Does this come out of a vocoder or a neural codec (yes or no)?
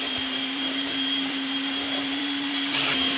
yes